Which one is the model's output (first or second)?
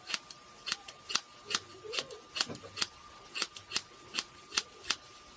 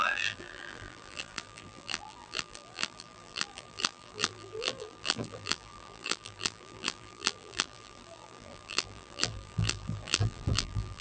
second